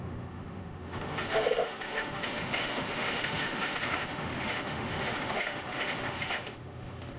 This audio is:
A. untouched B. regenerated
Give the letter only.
B